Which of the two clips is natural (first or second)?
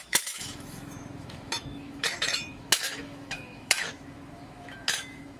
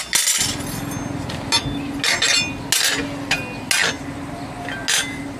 second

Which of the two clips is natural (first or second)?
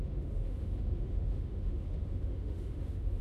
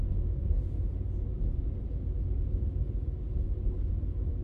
second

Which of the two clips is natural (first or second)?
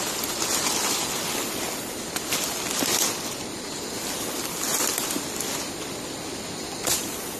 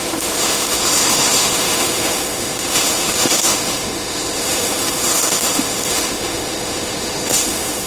first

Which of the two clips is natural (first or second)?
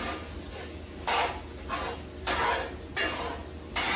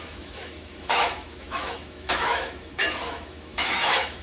first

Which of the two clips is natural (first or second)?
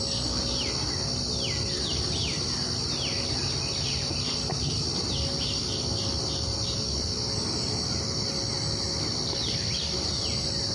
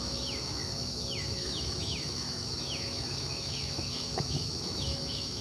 first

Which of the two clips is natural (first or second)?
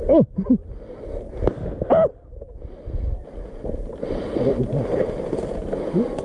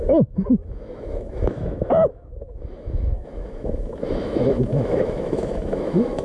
first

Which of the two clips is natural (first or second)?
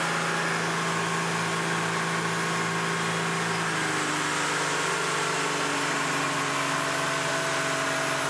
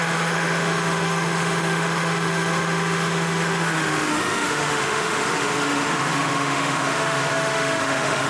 first